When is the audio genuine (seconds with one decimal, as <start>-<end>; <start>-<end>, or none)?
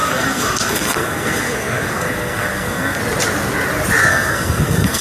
3.0-4.1